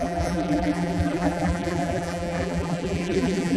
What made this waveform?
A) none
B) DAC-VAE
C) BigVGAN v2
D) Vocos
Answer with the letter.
C